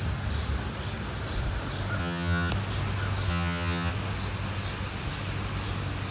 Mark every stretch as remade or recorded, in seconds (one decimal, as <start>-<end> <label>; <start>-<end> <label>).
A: 0.0-2.0 recorded; 2.0-2.5 remade; 2.5-3.3 recorded; 3.3-3.9 remade; 3.9-6.1 recorded